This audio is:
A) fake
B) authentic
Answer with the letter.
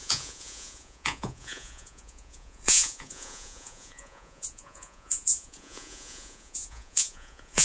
A